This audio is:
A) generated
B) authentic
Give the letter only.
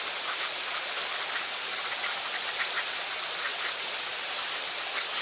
B